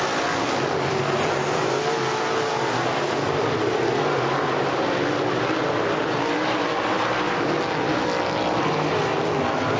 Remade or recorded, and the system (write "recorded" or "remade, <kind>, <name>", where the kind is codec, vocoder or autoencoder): recorded